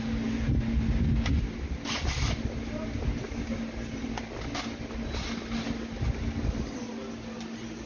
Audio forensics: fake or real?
real